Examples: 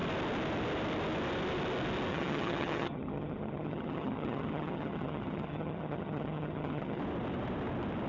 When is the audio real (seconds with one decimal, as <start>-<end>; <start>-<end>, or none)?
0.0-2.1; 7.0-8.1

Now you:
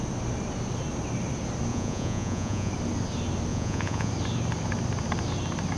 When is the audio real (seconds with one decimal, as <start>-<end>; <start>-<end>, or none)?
0.0-1.7; 2.7-3.5; 4.1-5.8

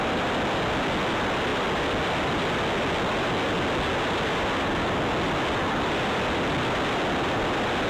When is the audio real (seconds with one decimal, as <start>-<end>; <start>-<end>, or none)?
0.0-7.9